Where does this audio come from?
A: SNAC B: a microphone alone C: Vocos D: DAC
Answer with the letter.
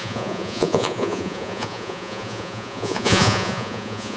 C